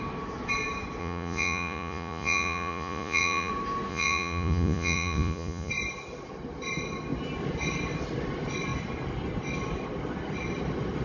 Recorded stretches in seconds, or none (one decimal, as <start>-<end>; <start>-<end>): 0.0-1.0; 3.5-3.9; 5.7-11.0